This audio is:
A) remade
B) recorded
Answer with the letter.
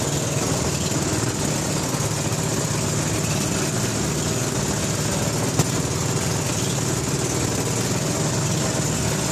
B